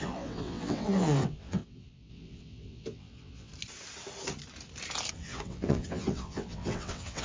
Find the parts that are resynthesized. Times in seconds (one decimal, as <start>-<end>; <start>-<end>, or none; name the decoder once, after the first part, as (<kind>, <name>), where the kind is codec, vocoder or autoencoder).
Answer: 0.0-3.5 (vocoder, WaveNeXt); 5.2-7.2